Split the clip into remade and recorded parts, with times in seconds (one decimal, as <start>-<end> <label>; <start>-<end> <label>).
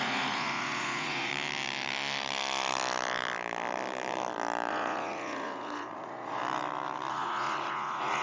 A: 0.0-1.3 remade; 1.3-4.7 recorded; 4.7-6.4 remade; 6.4-7.1 recorded; 7.1-8.2 remade